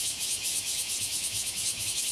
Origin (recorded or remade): remade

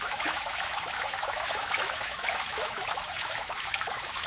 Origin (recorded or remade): remade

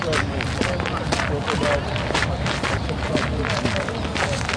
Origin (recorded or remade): recorded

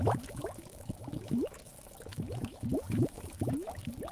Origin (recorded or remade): remade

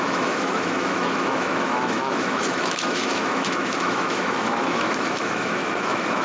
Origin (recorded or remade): remade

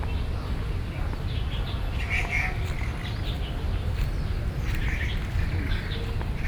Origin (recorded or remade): recorded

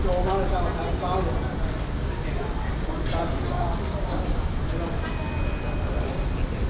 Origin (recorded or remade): recorded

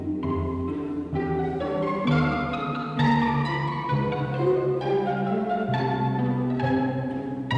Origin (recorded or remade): recorded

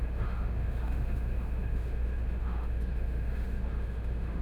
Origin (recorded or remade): remade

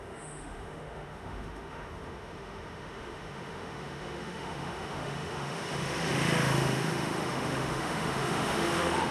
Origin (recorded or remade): remade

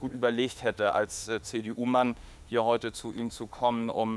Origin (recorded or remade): remade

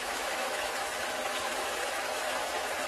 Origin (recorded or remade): remade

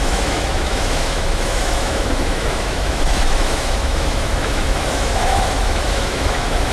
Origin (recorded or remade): remade